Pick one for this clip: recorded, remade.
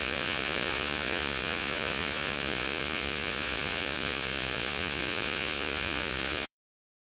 remade